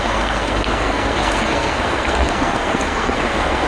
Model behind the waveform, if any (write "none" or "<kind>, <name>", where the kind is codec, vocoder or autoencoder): codec, SNAC